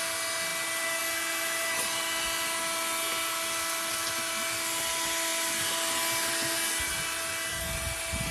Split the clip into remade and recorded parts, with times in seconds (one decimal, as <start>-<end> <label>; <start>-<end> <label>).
0.0-8.3 recorded